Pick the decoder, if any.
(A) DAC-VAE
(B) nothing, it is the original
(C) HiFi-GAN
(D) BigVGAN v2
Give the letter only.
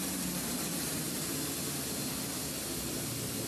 B